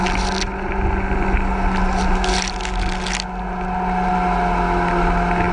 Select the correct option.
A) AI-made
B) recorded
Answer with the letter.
B